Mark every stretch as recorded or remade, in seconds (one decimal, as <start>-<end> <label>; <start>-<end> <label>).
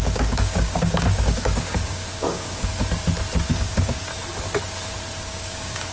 0.0-2.7 remade; 2.7-3.5 recorded; 3.5-4.1 remade; 4.1-5.2 recorded; 5.2-5.9 remade